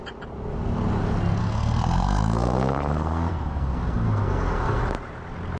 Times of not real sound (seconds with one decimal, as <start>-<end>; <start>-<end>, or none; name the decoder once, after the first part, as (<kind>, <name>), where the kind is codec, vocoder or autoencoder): 1.4-4.8 (codec, SNAC)